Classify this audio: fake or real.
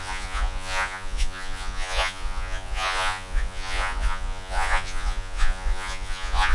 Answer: fake